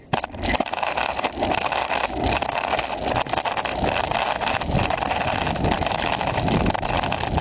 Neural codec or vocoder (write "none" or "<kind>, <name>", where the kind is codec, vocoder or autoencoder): none